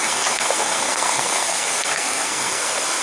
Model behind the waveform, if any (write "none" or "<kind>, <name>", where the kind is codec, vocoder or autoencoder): codec, SNAC